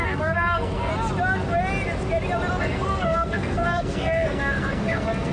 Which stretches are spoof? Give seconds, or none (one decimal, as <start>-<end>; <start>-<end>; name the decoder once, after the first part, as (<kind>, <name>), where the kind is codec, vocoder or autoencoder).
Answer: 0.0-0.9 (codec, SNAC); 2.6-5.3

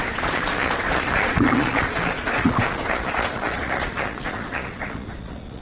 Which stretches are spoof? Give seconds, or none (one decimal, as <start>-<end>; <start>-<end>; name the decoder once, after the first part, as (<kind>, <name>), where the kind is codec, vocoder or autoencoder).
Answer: 0.0-5.6 (vocoder, Vocos)

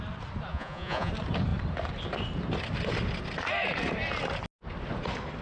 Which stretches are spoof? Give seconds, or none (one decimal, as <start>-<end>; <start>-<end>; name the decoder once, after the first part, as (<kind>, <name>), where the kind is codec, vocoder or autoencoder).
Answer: 0.5-1.1 (vocoder, Vocos)